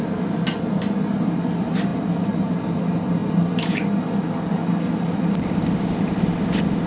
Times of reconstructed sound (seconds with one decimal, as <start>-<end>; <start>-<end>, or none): none